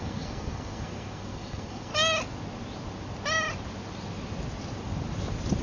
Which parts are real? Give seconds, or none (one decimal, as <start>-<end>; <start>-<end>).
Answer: 1.9-5.6